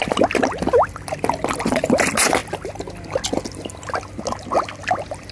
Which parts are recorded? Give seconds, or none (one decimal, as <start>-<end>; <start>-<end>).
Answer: 0.0-5.3